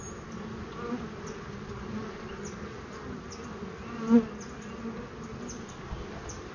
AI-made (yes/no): no